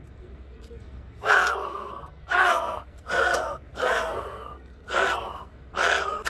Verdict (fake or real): fake